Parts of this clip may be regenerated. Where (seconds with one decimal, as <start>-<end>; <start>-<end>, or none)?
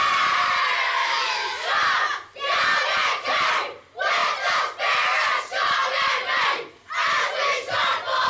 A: 1.0-1.7